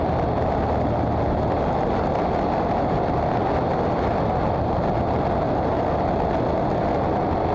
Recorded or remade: recorded